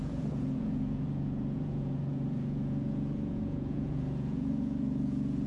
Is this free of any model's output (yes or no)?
no